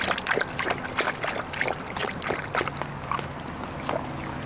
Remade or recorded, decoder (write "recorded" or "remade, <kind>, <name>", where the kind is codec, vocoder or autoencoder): recorded